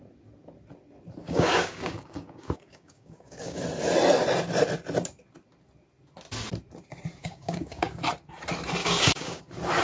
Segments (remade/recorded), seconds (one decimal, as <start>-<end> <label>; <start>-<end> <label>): 0.0-1.2 recorded; 1.2-3.6 remade; 3.6-7.2 recorded; 7.2-8.0 remade; 8.0-8.8 recorded; 8.8-9.4 remade; 9.4-9.8 recorded